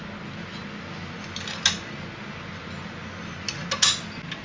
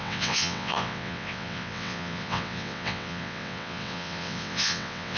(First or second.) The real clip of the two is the first